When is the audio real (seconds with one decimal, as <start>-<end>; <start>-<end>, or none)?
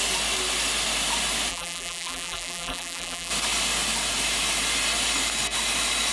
0.0-1.5; 3.3-6.1